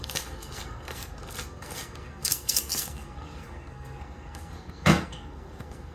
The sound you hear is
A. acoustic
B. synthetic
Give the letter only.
B